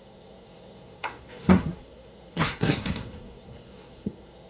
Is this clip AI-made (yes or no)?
yes